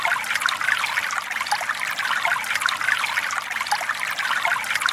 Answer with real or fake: real